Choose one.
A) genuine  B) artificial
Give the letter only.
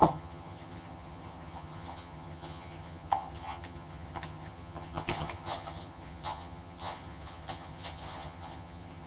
B